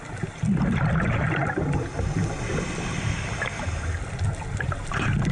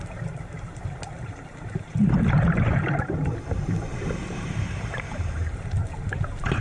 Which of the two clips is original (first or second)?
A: first